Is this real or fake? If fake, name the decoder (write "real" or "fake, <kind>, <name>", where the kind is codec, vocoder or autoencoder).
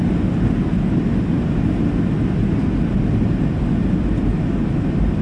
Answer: real